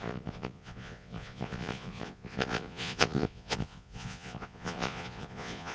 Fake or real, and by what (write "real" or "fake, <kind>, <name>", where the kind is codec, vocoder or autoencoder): fake, vocoder, Vocos